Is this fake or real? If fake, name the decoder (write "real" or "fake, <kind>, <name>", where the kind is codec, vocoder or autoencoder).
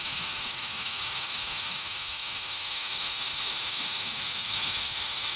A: fake, autoencoder, DAC-VAE